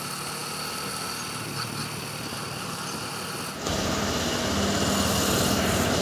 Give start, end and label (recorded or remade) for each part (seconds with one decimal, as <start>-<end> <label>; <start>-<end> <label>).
0.0-6.0 recorded